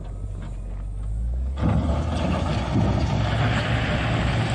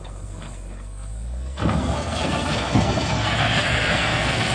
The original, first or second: first